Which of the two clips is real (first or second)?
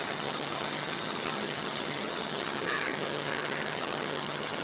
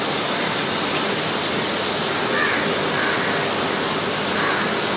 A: second